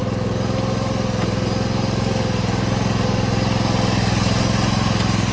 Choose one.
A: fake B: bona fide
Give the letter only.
B